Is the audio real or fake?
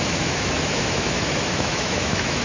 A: fake